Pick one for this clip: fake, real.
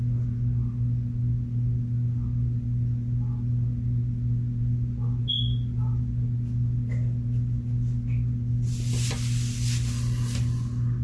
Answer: real